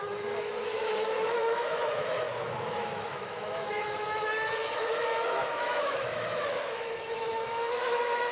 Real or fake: fake